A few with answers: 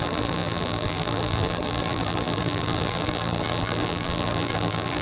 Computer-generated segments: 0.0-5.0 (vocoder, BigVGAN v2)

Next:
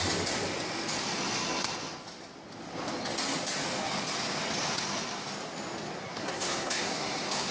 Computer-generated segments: 6.0-7.5 (codec, SNAC)

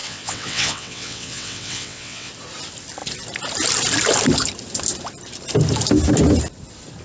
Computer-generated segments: 0.0-2.3 (vocoder, WaveNeXt)